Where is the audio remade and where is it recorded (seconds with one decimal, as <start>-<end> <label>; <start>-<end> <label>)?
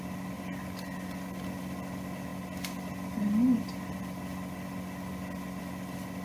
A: 0.0-6.2 recorded